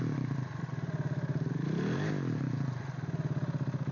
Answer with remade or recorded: recorded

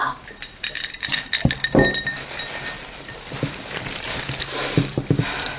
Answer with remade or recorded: remade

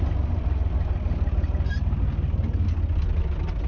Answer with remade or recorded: recorded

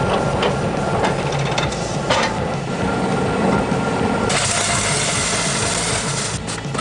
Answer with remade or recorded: recorded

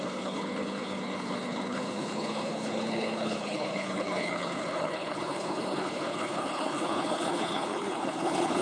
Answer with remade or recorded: remade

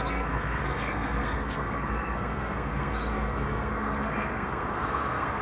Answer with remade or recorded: remade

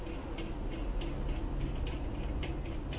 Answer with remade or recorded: recorded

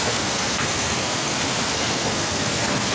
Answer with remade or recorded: remade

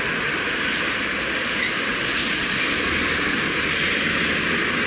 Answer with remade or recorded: recorded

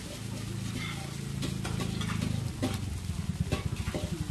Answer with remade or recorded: recorded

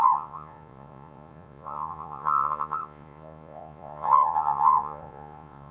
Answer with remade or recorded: remade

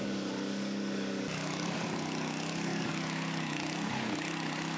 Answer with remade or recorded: remade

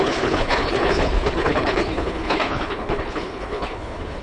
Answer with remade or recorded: remade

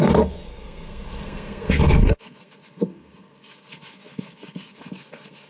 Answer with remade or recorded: remade